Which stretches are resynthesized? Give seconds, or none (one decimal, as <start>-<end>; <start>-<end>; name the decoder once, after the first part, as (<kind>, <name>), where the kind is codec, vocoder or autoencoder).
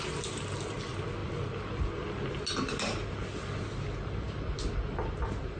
none